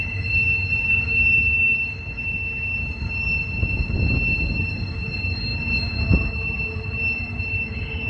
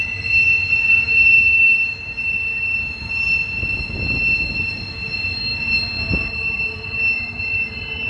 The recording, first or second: second